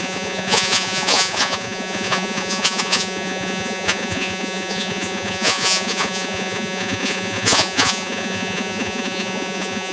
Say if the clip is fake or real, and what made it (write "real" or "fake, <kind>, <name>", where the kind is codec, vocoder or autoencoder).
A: fake, vocoder, Vocos